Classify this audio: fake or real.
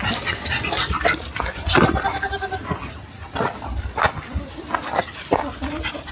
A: fake